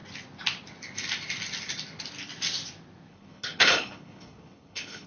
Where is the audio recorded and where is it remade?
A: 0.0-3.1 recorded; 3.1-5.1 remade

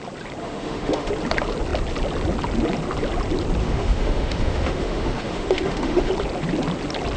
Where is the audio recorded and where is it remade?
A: 0.0-0.4 recorded; 0.4-1.1 remade; 1.1-3.6 recorded; 3.6-6.1 remade; 6.1-7.2 recorded